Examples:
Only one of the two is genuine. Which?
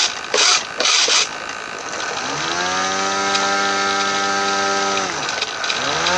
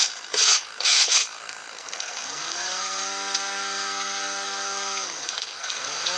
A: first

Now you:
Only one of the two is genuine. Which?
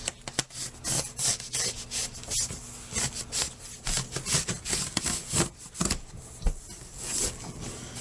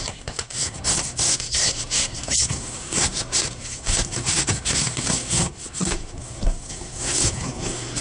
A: first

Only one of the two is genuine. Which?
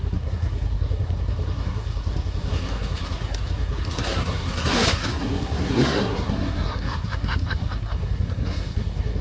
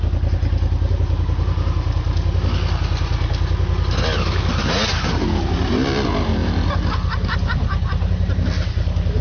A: second